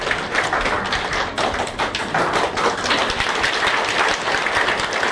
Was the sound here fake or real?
real